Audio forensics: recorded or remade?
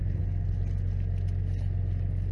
recorded